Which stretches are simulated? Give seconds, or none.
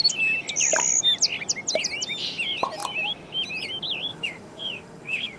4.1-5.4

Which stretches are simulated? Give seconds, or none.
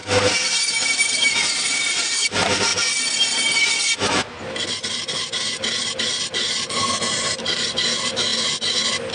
0.7-2.7; 7.2-8.3